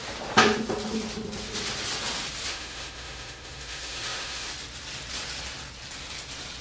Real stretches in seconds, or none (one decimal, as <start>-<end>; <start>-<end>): 0.0-2.5; 4.5-6.6